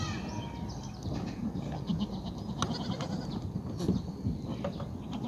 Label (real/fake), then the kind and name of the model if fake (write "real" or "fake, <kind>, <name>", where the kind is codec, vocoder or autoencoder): real